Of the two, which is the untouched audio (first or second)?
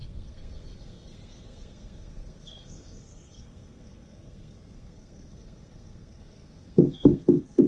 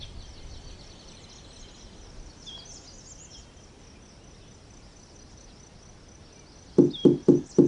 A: second